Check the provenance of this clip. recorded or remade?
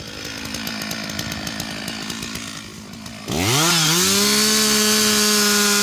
recorded